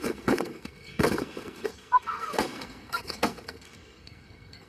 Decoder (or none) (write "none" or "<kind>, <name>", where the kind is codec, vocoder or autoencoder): codec, SNAC